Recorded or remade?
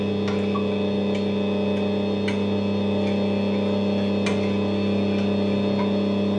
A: recorded